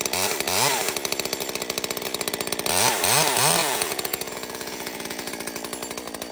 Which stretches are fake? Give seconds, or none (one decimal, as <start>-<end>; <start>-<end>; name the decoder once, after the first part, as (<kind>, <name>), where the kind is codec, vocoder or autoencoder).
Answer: 3.6-5.3 (vocoder, Vocos)